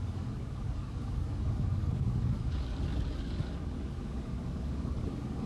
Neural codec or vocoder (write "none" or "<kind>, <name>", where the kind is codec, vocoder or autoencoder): codec, DAC